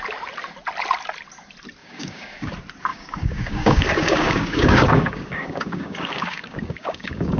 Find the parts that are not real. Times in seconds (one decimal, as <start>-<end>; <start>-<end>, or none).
1.8-2.5; 2.9-7.4